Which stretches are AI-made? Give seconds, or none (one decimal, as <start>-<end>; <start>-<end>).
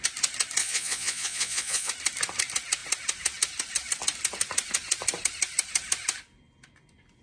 0.6-1.9